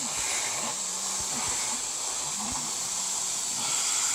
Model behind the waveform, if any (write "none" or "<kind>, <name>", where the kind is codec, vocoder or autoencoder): vocoder, BigVGAN v2